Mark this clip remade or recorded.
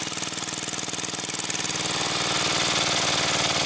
recorded